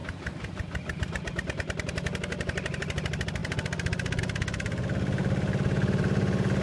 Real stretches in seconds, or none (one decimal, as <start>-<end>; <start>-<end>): 0.0-6.6